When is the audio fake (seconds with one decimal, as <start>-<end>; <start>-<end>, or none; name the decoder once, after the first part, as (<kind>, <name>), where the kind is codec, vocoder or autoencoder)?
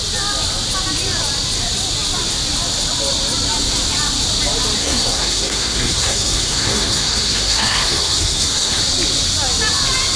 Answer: 4.8-8.8 (codec, SNAC)